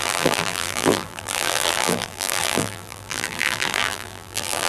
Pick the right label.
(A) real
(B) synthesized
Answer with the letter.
B